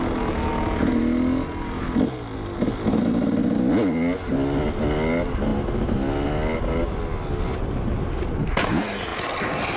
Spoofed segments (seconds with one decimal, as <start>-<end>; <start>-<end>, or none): none